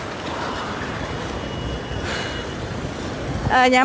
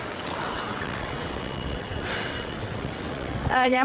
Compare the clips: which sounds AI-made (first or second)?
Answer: second